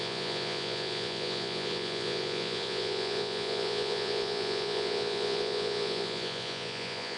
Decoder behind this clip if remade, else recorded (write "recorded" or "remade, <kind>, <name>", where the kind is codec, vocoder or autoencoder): remade, vocoder, Vocos